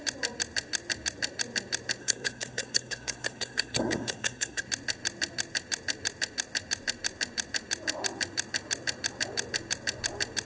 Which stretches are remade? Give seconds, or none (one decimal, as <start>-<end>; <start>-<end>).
2.0-4.6